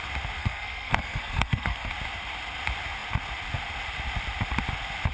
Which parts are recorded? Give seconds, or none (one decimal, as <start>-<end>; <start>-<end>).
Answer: 0.0-0.4; 1.9-5.1

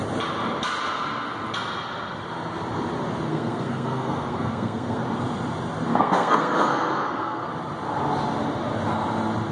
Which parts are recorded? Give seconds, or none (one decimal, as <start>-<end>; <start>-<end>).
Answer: 0.0-3.3; 5.0-5.9; 7.5-9.5

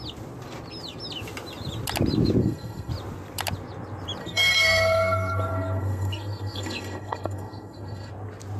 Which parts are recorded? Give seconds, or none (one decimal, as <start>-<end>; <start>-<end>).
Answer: 0.0-2.4; 2.9-4.2; 8.1-8.6

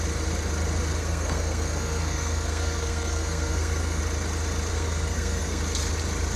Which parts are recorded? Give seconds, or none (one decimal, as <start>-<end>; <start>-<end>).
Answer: 0.0-1.0; 4.0-4.7; 5.6-6.4

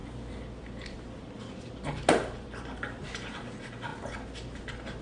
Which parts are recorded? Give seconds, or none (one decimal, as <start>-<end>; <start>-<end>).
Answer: 0.0-5.0

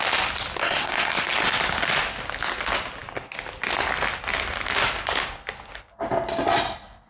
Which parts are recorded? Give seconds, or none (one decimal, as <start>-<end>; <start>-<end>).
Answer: 0.0-0.6; 1.2-7.1

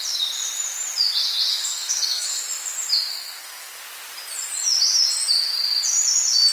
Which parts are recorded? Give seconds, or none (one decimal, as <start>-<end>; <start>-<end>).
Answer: 0.0-1.5; 2.4-3.1; 3.8-6.5

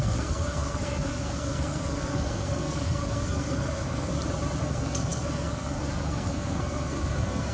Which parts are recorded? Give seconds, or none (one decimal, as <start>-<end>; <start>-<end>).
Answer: 4.1-4.6